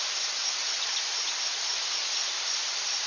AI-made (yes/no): yes